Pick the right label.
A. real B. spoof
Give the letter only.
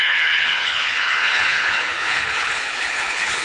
B